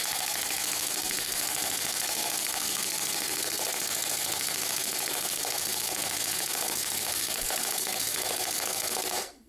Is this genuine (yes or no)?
no